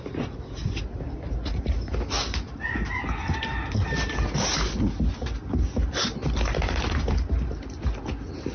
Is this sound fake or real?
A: real